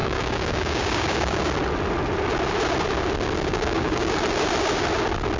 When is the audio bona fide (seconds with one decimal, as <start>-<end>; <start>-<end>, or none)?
1.4-3.5; 4.1-5.4